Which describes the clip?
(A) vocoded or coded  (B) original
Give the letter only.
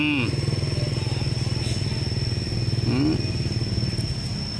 B